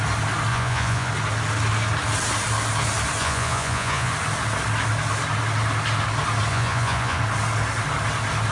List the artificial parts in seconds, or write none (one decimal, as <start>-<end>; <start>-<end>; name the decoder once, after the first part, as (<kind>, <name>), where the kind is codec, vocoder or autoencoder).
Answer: 0.5-1.1 (vocoder, Vocos); 3.2-4.1; 6.5-7.2